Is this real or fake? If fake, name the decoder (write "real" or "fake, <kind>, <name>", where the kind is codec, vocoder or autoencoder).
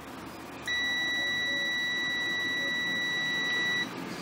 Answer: real